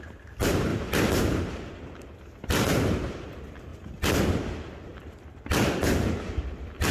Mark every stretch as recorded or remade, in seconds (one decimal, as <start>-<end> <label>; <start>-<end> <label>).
0.0-0.7 recorded; 0.7-1.8 remade; 1.8-4.9 recorded; 4.9-5.8 remade; 5.8-6.9 recorded